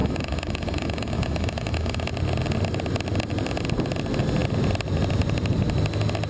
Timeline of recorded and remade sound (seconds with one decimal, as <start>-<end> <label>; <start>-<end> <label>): 0.0-2.1 remade; 2.1-6.3 recorded